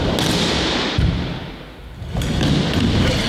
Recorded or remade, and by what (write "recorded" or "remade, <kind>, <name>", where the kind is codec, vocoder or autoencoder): recorded